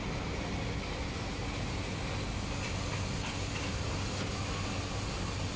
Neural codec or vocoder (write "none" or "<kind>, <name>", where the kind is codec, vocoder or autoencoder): none